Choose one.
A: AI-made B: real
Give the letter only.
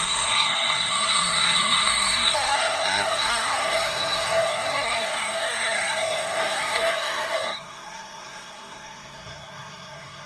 A